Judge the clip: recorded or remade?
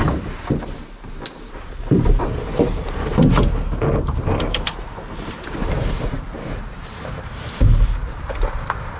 remade